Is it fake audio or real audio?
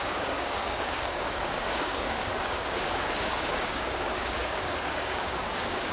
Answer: fake